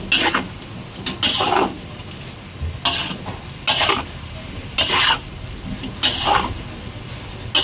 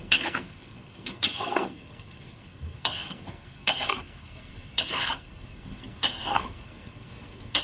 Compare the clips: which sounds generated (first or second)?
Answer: second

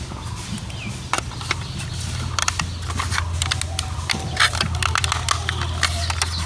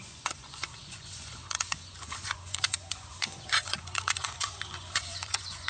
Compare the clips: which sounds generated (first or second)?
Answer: second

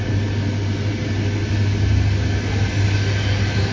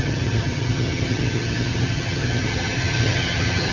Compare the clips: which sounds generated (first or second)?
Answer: second